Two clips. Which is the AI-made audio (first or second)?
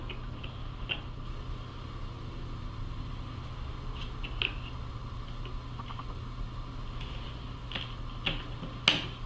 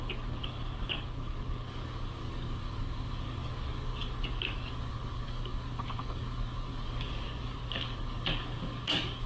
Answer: second